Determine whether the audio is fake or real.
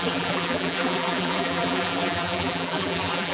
fake